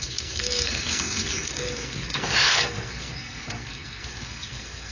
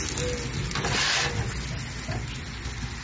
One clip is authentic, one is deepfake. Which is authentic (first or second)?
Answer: second